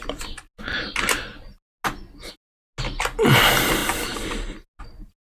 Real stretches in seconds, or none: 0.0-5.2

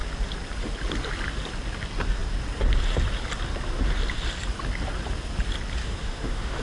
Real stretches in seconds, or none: 0.0-5.8

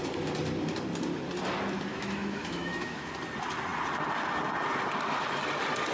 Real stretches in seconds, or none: 0.0-1.9; 3.1-5.9

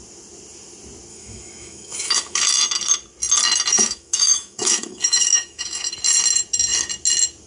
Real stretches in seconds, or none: 0.0-1.1; 2.4-3.7; 5.9-7.5

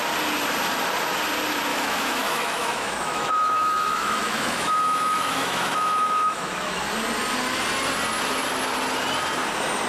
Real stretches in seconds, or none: 0.0-1.7; 6.8-9.9